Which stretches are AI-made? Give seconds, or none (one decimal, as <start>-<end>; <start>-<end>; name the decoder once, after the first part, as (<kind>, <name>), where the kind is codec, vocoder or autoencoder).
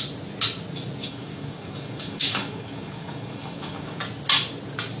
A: 1.0-4.0 (codec, DAC)